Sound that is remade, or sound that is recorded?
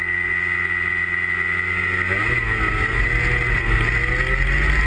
recorded